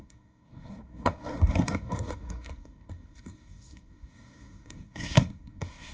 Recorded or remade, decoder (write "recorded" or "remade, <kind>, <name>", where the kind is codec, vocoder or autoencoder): remade, codec, SNAC